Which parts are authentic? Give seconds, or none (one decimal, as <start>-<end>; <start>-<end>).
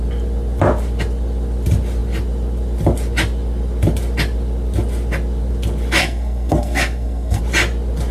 0.0-6.0; 7.4-8.1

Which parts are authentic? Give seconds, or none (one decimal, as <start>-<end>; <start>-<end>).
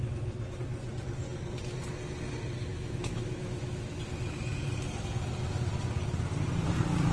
0.0-2.7; 3.8-7.1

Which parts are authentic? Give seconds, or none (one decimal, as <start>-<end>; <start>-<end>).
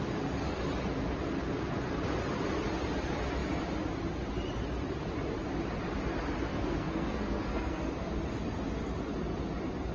0.0-6.5; 7.8-9.9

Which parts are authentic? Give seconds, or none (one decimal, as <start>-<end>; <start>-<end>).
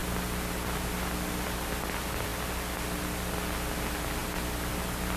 0.0-5.2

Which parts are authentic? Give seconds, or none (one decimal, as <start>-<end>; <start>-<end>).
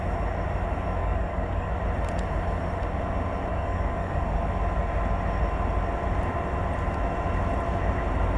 0.0-1.0; 1.7-3.5; 4.6-8.4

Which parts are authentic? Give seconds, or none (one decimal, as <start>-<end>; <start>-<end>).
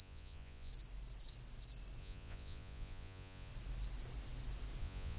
0.7-2.0; 3.5-4.8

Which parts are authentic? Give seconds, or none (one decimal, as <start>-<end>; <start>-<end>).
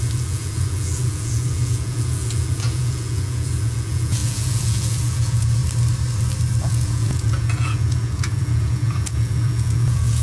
5.6-6.6